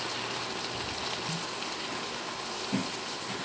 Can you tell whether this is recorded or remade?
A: recorded